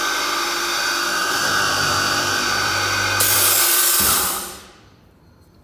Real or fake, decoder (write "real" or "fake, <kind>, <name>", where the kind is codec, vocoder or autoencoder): fake, vocoder, BigVGAN v2